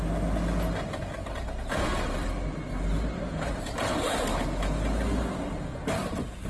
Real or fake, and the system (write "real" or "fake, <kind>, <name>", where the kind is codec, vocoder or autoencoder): real